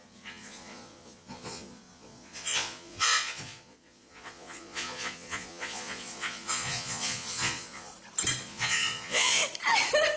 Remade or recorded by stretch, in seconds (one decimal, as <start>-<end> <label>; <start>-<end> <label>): 0.0-7.9 remade; 7.9-8.4 recorded; 8.4-9.4 remade; 9.4-10.2 recorded

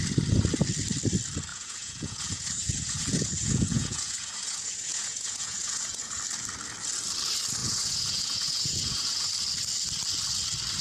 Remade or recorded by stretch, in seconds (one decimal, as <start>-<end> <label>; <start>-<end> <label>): 0.0-1.5 recorded; 1.5-6.2 remade; 6.2-7.6 recorded; 7.6-9.3 remade; 9.3-10.8 recorded

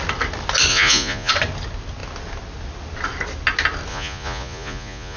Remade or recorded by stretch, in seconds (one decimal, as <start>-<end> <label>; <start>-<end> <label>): 0.0-0.7 recorded; 0.7-1.3 remade; 1.3-3.9 recorded; 3.9-5.2 remade

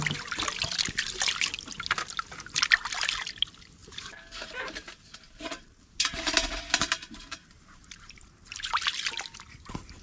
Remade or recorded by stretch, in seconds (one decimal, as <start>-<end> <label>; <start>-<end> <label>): 0.0-3.8 recorded; 3.8-8.3 remade; 8.3-10.0 recorded

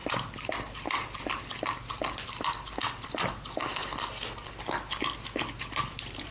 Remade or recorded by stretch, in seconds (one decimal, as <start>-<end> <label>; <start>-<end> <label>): 0.0-6.3 recorded

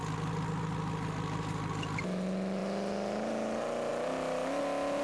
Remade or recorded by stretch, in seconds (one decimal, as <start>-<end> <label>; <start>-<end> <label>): 0.0-5.0 recorded

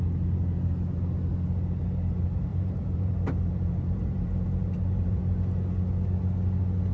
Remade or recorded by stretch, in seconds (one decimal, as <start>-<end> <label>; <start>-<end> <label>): 0.0-2.5 recorded; 2.5-5.2 remade; 5.2-6.9 recorded

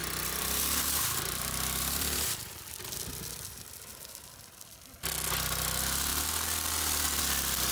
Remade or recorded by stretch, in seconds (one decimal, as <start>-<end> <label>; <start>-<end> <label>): 0.0-4.6 remade; 4.6-6.1 recorded; 6.1-7.2 remade; 7.2-7.7 recorded